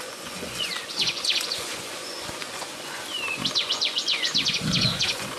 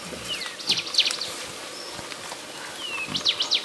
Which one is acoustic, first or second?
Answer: second